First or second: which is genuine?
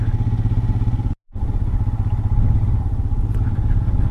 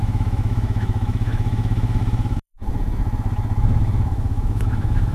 first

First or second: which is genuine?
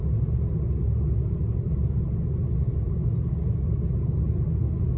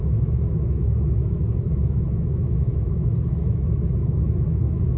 first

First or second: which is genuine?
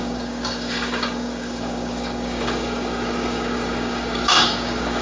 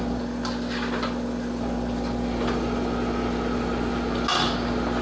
second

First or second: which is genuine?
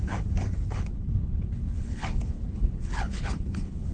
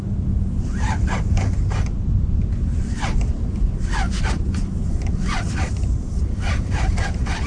second